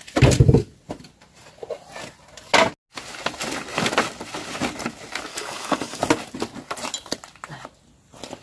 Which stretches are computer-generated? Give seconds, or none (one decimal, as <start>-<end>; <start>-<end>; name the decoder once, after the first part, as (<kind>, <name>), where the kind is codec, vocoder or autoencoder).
5.3-6.0 (codec, DAC)